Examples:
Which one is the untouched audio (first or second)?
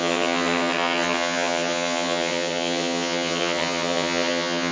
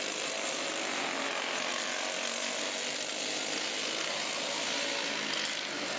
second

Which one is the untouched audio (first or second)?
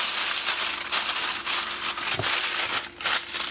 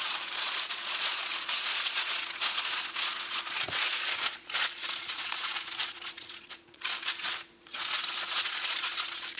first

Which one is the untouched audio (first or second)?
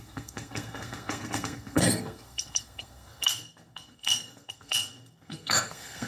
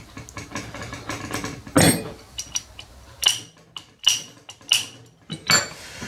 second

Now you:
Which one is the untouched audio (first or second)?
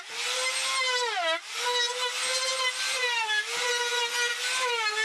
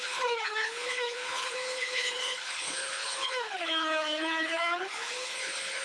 first